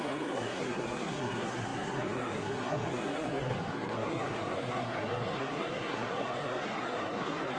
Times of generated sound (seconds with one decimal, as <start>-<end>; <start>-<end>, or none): 0.0-7.6